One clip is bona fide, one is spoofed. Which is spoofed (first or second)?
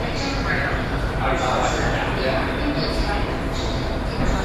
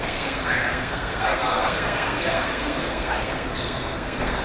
second